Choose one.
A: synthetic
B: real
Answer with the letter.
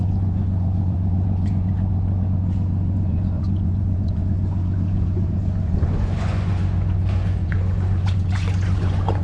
A